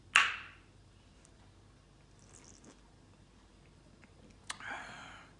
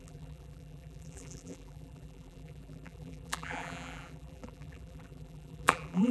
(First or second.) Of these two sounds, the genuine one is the first